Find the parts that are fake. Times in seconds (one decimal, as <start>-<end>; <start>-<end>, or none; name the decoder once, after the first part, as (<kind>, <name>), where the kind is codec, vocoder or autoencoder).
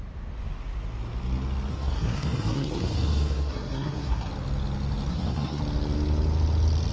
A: 1.7-4.3 (codec, SNAC); 5.1-5.6